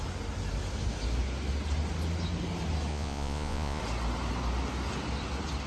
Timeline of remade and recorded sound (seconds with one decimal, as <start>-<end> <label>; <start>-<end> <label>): 0.0-2.9 recorded; 2.9-3.8 remade; 3.8-5.7 recorded